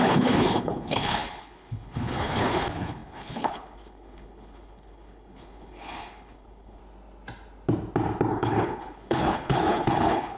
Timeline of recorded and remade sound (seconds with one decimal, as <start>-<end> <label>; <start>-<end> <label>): 0.0-6.8 remade; 6.8-8.3 recorded; 8.3-10.4 remade